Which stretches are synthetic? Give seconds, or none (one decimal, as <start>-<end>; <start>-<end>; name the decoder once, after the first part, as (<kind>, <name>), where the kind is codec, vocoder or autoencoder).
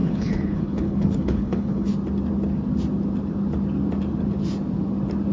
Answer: 0.0-1.9 (codec, HILCodec)